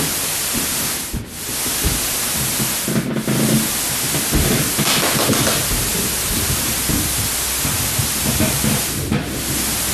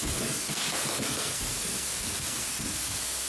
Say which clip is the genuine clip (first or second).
first